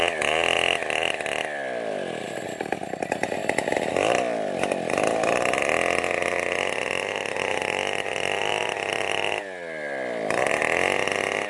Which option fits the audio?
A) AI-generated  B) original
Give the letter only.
B